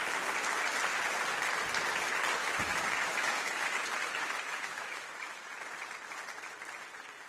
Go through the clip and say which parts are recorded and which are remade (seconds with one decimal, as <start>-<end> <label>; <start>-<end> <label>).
0.0-2.4 recorded; 2.4-5.5 remade; 5.5-7.3 recorded